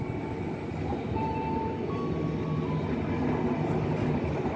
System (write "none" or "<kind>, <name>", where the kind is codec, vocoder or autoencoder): none